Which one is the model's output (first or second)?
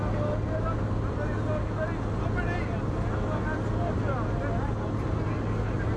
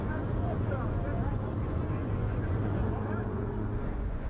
second